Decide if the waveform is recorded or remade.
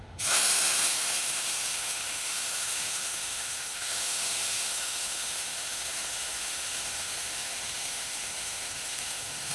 remade